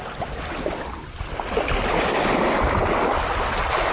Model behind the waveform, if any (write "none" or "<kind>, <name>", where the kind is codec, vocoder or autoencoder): none